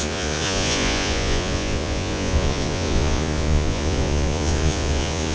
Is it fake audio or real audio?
fake